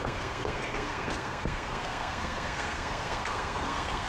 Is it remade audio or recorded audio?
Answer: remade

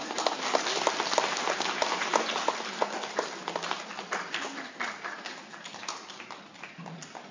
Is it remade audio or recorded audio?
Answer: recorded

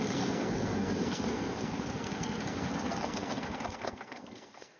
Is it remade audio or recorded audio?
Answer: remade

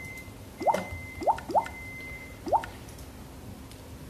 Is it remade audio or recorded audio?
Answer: recorded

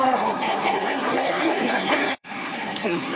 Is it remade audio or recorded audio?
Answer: remade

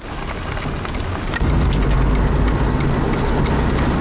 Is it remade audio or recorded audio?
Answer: recorded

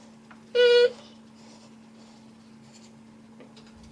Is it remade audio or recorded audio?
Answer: recorded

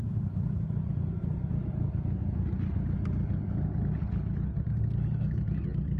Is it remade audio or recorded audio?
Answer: recorded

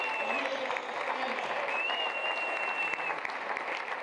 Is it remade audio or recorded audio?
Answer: recorded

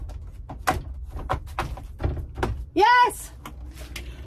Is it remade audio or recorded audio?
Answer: recorded